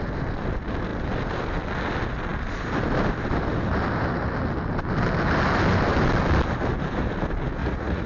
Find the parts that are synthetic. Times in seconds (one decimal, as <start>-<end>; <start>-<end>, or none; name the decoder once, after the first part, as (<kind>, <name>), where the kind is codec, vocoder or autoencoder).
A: 7.6-8.1 (vocoder, Vocos)